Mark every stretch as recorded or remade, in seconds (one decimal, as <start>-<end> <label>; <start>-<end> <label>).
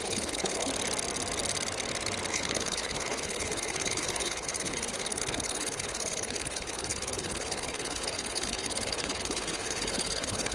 0.0-0.7 remade; 0.7-2.3 recorded; 2.3-10.5 remade